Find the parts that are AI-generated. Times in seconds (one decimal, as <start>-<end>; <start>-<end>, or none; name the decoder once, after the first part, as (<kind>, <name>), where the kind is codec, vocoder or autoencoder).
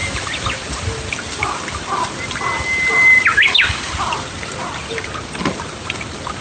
3.3-3.9 (codec, DAC)